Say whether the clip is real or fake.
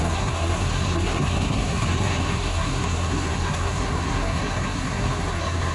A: fake